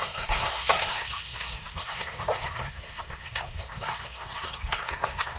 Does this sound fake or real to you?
fake